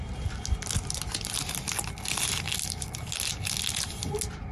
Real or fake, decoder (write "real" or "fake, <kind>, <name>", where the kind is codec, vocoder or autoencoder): real